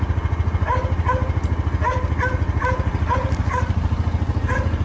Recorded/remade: recorded